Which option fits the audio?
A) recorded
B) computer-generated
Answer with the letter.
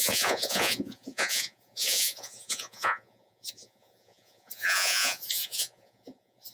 B